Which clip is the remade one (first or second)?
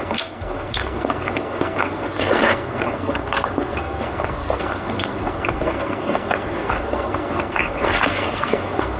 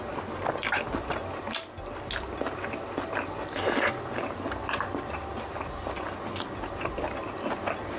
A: first